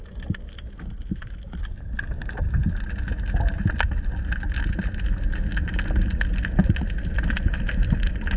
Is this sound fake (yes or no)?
no